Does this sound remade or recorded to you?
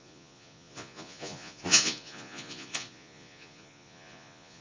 remade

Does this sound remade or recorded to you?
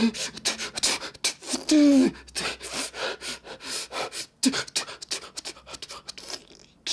recorded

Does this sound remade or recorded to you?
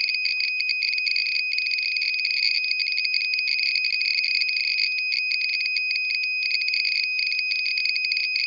recorded